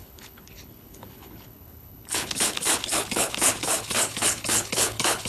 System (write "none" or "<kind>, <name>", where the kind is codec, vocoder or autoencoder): codec, HILCodec